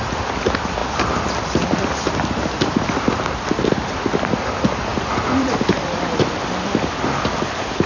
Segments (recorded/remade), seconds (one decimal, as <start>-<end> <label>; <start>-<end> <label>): 0.0-0.8 recorded; 0.8-4.0 remade; 4.0-7.9 recorded